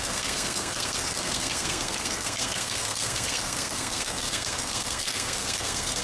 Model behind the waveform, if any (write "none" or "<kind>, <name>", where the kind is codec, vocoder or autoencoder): codec, SNAC